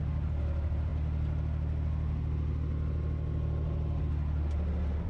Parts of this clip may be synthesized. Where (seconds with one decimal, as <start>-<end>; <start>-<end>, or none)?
none